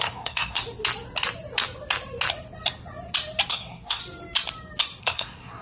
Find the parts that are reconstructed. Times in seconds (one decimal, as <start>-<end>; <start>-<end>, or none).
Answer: 0.0-0.6; 3.5-4.0; 5.0-5.6